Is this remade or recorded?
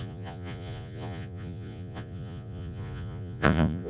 remade